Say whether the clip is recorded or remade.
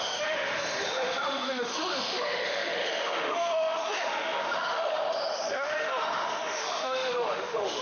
remade